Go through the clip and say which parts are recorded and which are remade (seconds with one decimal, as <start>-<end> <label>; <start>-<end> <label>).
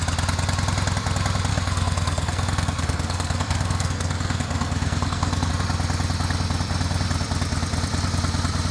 0.0-1.5 recorded; 1.5-5.5 remade; 5.5-8.7 recorded